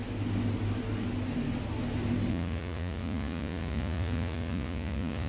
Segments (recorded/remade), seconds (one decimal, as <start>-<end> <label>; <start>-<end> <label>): 0.0-2.3 recorded; 2.3-5.3 remade